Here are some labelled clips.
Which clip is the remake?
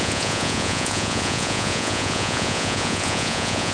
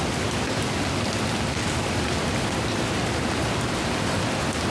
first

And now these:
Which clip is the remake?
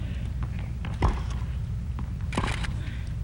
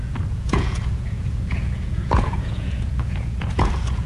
second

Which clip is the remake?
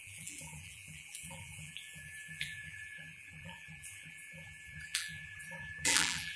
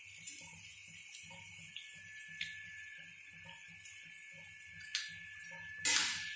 first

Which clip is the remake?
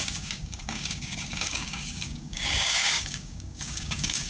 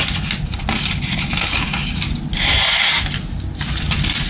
first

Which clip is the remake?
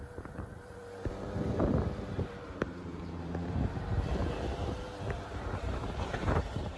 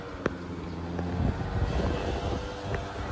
first